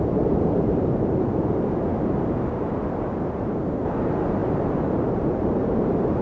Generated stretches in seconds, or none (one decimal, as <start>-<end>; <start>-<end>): 0.0-6.2